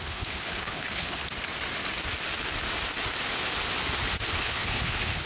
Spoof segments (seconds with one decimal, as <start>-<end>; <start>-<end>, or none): 0.0-1.2; 4.4-5.3